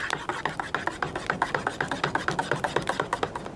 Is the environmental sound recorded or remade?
recorded